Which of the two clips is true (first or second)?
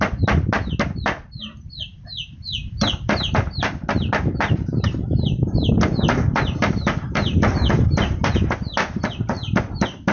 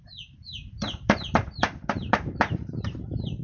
first